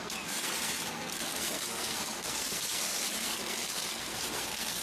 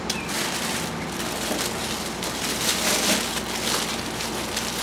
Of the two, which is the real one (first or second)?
second